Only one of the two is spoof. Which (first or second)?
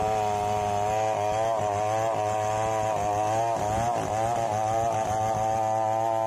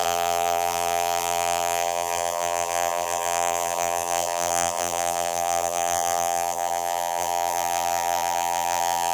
second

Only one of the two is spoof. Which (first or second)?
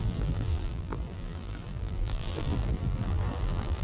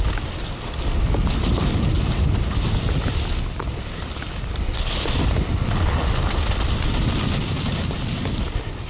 first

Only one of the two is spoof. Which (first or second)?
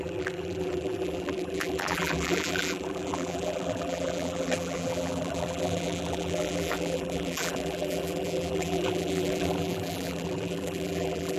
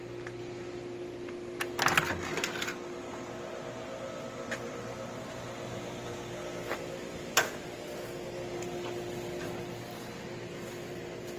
first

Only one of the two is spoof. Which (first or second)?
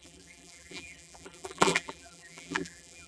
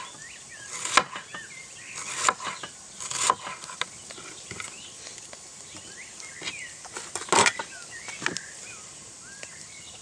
first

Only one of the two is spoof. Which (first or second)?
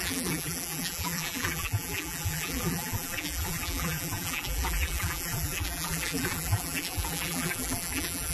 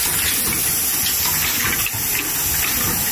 first